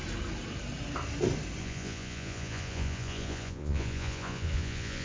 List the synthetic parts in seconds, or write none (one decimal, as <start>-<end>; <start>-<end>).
1.6-5.0